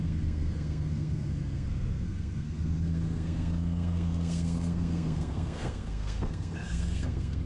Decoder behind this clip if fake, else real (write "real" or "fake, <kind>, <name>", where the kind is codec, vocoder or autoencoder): fake, codec, SNAC